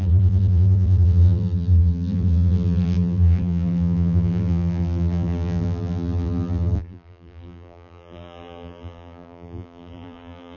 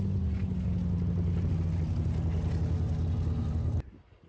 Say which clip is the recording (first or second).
second